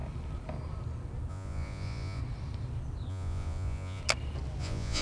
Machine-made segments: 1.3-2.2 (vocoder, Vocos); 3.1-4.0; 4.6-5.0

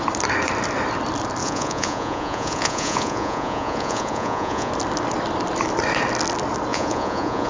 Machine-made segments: 1.4-4.7 (vocoder, Vocos); 6.7-7.5

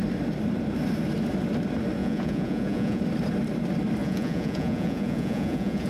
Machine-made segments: 2.0-3.0 (vocoder, Vocos); 4.0-5.9

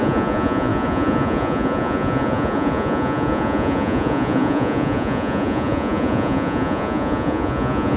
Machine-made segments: 0.0-8.0 (vocoder, Vocos)